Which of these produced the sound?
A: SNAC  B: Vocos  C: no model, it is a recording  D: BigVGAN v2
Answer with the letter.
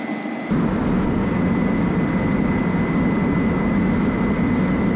C